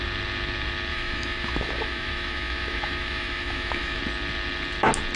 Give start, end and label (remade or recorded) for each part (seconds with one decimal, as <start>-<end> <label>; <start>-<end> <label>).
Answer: 0.0-0.9 recorded; 0.9-4.0 remade; 4.0-5.2 recorded